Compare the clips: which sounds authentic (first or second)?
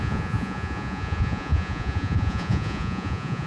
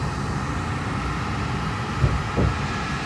second